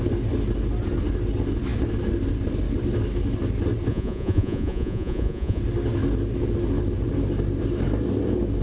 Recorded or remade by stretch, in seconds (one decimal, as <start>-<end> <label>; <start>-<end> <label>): 0.0-3.9 recorded; 3.9-5.6 remade; 5.6-8.6 recorded